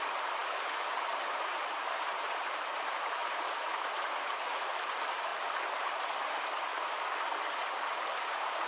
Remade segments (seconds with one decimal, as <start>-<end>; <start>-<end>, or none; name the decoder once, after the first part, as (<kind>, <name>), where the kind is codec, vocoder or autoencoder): 0.0-5.3 (vocoder, BigVGAN v2); 5.8-6.7; 7.5-8.7